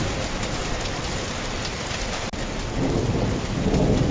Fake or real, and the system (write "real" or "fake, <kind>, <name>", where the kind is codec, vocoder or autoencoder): real